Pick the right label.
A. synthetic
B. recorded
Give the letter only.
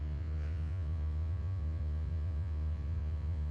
A